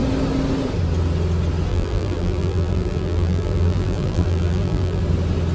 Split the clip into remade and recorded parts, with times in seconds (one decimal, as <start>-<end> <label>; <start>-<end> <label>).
0.0-1.7 recorded; 1.7-5.0 remade; 5.0-5.5 recorded